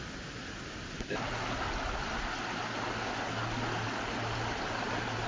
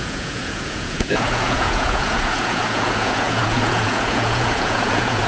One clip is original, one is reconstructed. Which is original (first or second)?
first